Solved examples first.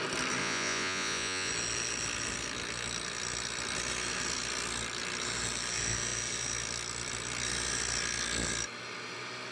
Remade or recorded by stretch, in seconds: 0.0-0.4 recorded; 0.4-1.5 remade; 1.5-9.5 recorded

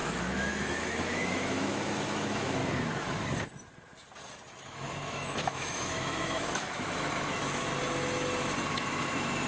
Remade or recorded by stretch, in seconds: 0.0-2.6 remade; 2.6-4.6 recorded; 4.6-7.7 remade; 7.7-8.7 recorded; 8.7-9.5 remade

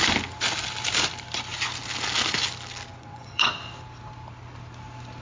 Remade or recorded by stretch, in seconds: 0.0-2.9 recorded; 2.9-3.5 remade; 3.5-5.2 recorded

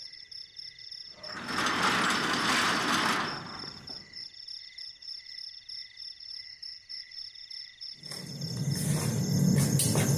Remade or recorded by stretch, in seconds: 0.0-10.2 recorded

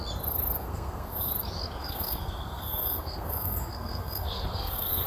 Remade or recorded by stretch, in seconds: 0.0-0.6 recorded; 0.6-1.3 remade; 1.3-1.8 recorded; 1.8-5.1 remade

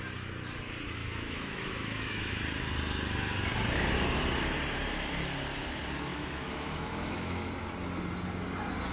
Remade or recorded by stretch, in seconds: 0.0-1.0 recorded; 1.0-2.4 remade; 2.4-6.1 recorded; 6.1-7.5 remade; 7.5-8.9 recorded

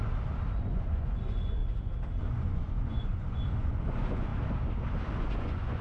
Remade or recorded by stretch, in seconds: 0.0-0.6 recorded; 0.6-1.6 remade; 1.6-2.2 recorded; 2.2-4.3 remade; 4.3-5.2 recorded; 5.2-5.8 remade

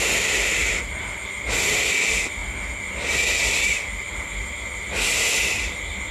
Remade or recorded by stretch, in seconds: 0.0-6.1 recorded